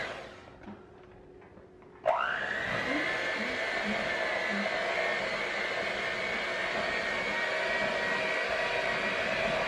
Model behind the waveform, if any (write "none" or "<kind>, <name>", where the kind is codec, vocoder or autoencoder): none